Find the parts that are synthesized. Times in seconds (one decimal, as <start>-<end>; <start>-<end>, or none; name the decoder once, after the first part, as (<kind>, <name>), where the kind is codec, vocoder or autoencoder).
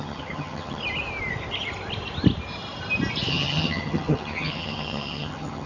0.0-0.8 (vocoder, HiFi-GAN); 3.3-5.7